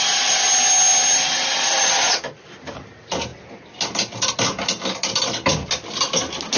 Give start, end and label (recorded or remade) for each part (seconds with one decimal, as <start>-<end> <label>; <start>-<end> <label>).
0.0-1.5 recorded; 1.5-2.3 remade; 2.3-6.6 recorded